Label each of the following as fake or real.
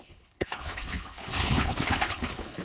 fake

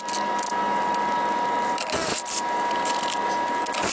real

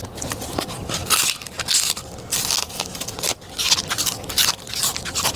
real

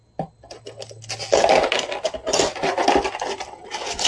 real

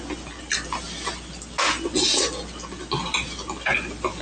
real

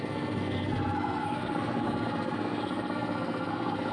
fake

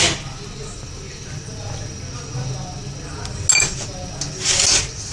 real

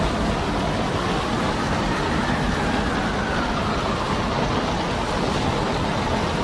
real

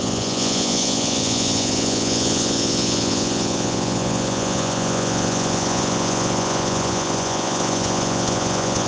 fake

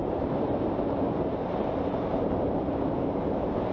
fake